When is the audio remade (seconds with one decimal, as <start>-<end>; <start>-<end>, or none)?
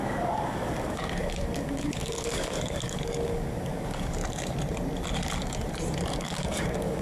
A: 0.0-4.2; 6.2-7.0